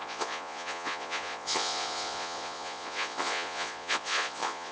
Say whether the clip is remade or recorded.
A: remade